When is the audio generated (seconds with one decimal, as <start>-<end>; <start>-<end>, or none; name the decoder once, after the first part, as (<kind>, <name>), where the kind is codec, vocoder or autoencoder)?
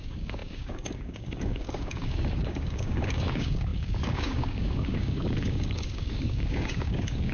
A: 0.0-7.3 (codec, DAC)